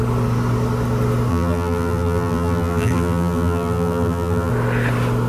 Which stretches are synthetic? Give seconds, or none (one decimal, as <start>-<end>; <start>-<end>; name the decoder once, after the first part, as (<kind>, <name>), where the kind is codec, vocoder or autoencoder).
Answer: 1.3-4.5 (vocoder, BigVGAN v2)